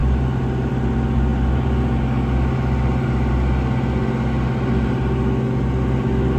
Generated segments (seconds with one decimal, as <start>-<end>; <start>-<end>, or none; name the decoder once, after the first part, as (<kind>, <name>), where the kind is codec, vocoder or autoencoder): none